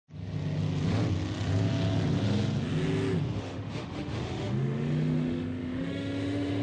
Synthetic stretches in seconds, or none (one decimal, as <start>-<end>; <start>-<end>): 3.4-6.6